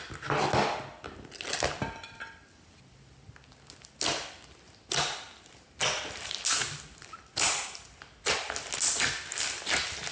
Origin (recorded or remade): recorded